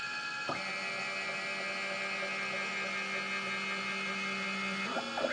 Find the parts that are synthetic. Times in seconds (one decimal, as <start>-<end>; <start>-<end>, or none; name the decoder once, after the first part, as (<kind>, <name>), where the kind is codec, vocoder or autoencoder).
none